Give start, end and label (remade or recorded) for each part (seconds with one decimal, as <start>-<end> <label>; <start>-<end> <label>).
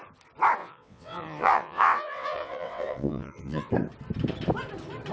0.0-0.6 recorded; 0.6-3.7 remade; 3.7-5.1 recorded